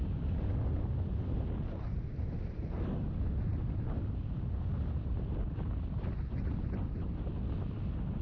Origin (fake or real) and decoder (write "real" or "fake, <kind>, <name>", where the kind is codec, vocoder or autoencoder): real